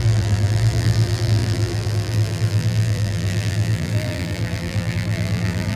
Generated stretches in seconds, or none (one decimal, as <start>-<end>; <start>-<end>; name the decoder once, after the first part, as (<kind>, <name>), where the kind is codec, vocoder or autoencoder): 0.0-5.8 (vocoder, BigVGAN v2)